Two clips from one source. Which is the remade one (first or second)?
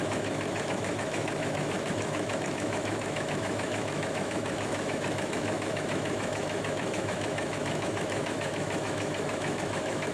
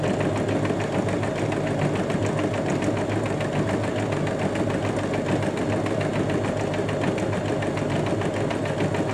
first